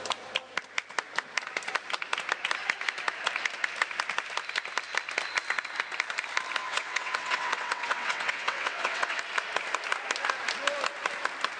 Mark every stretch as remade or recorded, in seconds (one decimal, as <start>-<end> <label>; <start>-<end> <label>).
0.0-6.6 recorded; 6.6-9.2 remade; 9.2-11.6 recorded